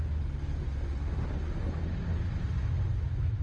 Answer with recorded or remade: recorded